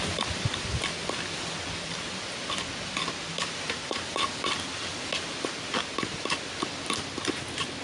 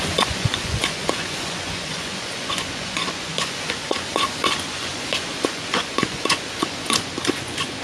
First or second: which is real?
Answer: first